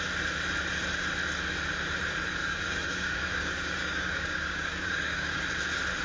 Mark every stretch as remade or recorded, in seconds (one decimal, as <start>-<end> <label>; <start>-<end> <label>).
0.0-2.4 recorded; 2.4-5.4 remade; 5.4-6.0 recorded